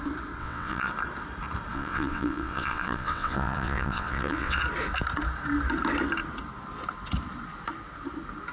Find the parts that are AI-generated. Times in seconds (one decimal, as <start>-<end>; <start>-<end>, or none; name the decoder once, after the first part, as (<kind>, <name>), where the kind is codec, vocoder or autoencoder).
0.4-0.9 (vocoder, WaveNeXt); 1.7-4.6